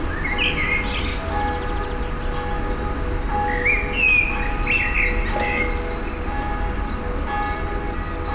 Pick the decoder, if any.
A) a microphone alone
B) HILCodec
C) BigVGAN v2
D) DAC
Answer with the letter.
A